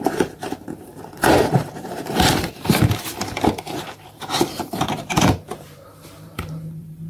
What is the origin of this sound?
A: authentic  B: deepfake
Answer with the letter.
B